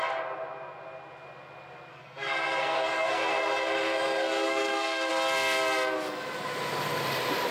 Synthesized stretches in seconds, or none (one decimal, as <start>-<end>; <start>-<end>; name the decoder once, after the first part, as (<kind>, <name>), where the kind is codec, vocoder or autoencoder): 1.9-5.1 (codec, SNAC)

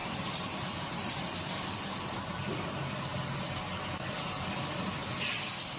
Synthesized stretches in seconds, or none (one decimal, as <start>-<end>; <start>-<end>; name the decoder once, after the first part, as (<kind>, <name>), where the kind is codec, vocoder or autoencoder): none

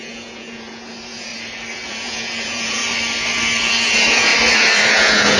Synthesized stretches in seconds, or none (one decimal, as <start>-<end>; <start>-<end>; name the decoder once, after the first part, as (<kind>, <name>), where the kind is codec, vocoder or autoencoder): 0.0-1.3 (vocoder, Vocos); 1.9-2.8; 3.9-4.3; 4.9-5.4

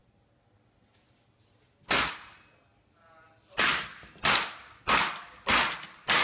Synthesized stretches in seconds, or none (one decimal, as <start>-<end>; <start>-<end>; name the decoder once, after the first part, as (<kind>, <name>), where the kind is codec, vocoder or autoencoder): none

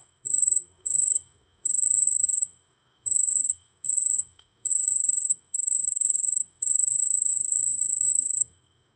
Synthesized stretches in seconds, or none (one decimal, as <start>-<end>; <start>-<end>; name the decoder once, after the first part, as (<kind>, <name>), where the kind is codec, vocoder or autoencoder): 0.0-9.0 (codec, DAC)